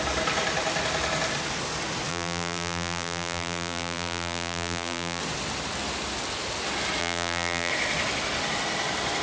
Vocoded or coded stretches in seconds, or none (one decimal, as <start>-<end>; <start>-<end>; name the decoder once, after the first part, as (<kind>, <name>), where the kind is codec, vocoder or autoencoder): 2.1-5.2 (vocoder, BigVGAN v2); 7.0-7.7